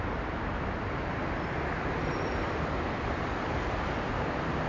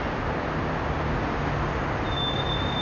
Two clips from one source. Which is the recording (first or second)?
second